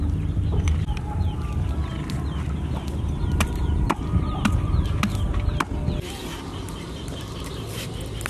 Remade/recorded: recorded